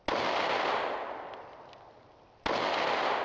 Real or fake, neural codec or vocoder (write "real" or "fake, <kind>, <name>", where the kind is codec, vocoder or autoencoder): real